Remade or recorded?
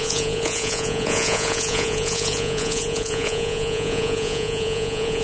remade